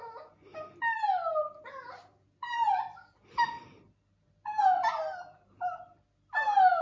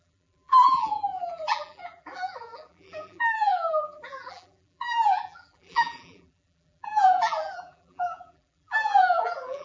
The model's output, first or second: second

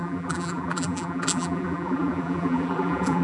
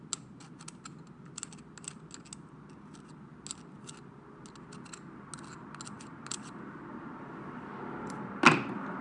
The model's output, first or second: first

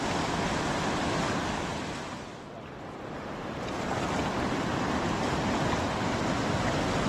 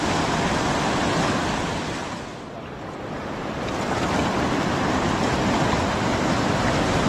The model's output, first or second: second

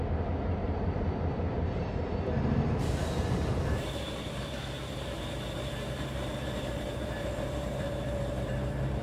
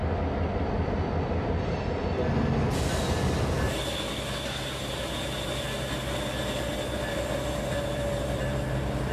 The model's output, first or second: first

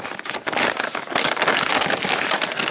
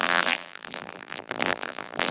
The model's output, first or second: second